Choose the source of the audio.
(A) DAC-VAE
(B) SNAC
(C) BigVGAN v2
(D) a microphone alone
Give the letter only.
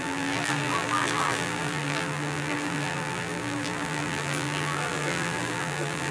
C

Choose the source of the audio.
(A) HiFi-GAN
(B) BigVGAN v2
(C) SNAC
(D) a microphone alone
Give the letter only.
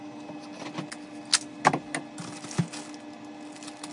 D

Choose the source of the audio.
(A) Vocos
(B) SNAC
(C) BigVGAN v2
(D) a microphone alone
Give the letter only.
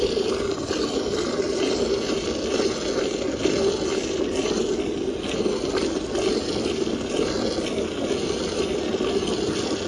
D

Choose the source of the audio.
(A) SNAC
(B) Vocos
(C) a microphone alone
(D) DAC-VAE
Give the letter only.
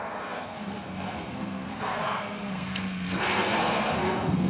A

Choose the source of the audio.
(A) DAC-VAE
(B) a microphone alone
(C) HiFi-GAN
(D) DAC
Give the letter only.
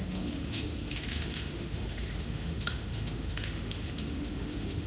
A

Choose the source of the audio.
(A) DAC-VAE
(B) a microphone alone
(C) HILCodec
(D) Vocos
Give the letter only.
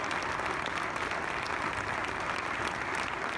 B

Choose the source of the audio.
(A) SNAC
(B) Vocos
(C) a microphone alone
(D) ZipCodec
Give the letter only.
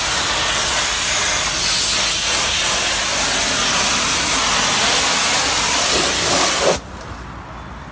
C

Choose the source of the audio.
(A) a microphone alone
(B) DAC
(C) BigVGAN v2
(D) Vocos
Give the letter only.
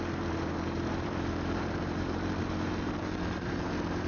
C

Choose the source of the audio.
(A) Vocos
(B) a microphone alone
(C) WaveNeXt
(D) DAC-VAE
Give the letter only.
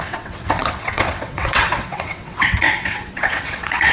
C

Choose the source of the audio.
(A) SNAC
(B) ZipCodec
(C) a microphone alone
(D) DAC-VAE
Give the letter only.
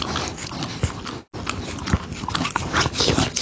C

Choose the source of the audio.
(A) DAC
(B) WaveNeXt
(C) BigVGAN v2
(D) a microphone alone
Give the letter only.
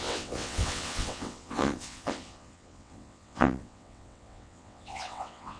B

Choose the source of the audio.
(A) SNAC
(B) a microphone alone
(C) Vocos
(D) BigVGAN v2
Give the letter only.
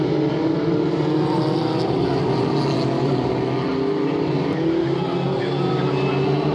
B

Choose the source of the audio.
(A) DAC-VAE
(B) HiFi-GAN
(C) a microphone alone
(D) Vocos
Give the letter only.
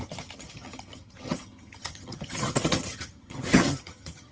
B